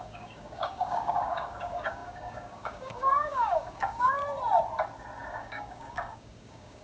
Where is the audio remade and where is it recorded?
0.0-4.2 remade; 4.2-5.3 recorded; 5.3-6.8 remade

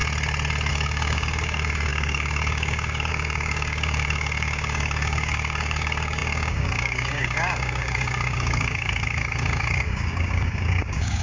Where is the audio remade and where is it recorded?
0.0-0.7 recorded; 0.7-11.2 remade

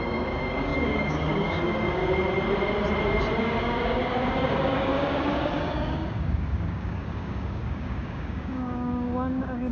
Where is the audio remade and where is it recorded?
0.0-2.0 remade; 2.0-3.4 recorded; 3.4-9.7 remade

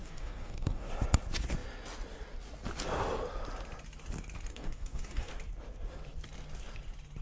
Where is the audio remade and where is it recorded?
0.0-0.9 remade; 0.9-4.5 recorded; 4.5-5.3 remade; 5.3-7.2 recorded

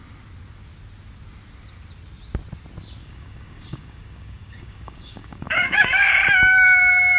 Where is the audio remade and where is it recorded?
0.0-3.0 recorded; 3.0-6.1 remade; 6.1-7.2 recorded